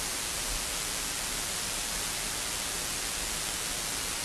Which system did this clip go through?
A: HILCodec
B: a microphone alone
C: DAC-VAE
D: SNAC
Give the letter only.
B